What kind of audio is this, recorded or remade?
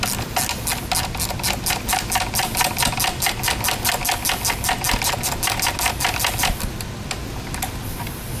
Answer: recorded